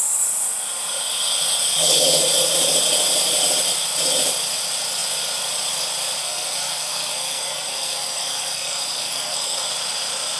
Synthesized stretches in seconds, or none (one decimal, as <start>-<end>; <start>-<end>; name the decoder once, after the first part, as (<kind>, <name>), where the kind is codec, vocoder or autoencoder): 6.2-9.7 (codec, SNAC)